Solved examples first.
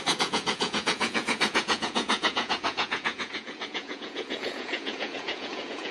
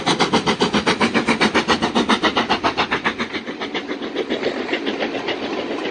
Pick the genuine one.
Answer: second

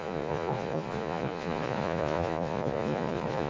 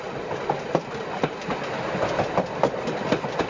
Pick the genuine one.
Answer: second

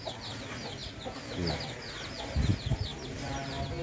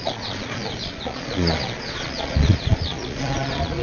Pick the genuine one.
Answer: first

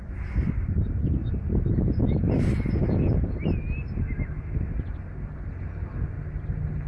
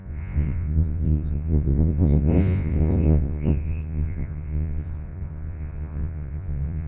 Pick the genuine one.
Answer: first